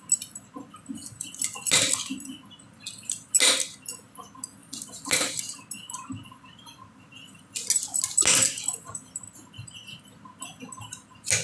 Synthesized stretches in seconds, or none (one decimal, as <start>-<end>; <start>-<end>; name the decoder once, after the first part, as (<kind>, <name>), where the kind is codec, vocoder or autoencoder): none